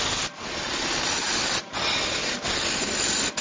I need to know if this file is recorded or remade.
recorded